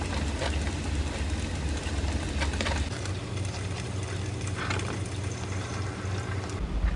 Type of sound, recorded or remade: recorded